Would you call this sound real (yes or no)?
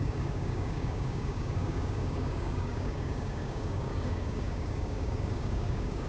no